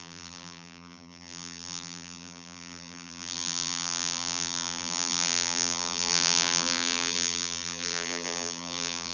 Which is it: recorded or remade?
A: remade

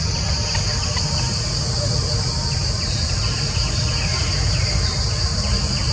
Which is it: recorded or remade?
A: recorded